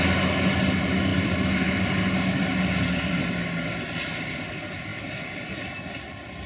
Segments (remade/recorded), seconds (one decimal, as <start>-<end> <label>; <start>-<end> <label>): 0.0-1.1 recorded; 1.1-3.4 remade; 3.4-6.5 recorded